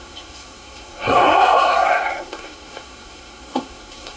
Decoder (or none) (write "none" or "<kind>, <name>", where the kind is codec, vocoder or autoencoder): codec, SNAC